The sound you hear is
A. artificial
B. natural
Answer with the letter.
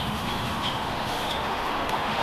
A